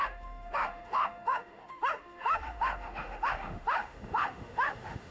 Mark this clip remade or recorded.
remade